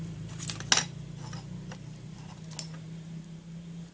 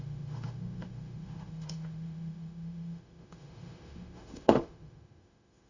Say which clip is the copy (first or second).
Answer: second